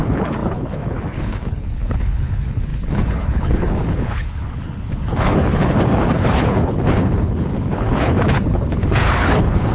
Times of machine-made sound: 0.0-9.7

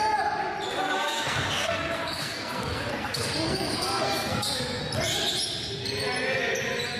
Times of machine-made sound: 0.8-4.8

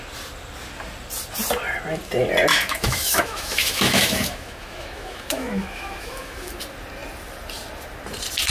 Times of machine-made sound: 2.5-6.6

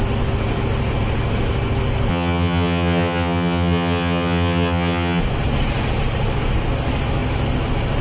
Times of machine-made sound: 2.1-5.2